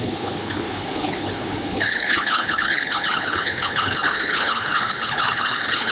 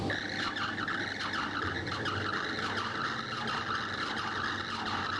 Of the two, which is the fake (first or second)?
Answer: first